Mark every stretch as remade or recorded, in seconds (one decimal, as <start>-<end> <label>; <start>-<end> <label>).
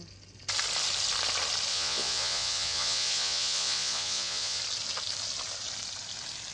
0.0-1.7 recorded; 1.7-4.6 remade; 4.6-6.5 recorded